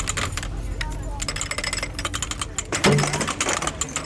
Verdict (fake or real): real